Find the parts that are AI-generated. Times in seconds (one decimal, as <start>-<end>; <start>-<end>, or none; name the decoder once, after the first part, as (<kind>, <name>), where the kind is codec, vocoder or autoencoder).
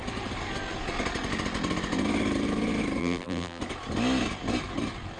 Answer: 3.0-3.6 (vocoder, BigVGAN v2)